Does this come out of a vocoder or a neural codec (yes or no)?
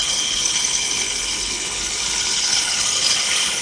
yes